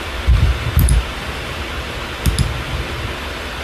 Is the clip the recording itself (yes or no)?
yes